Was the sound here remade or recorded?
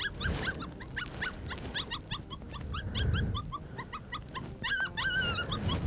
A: recorded